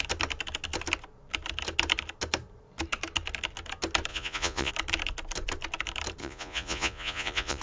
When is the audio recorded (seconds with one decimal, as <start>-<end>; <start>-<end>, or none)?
0.0-4.1; 4.7-6.2